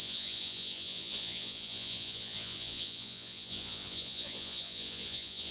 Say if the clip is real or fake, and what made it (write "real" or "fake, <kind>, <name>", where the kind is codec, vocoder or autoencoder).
fake, vocoder, Vocos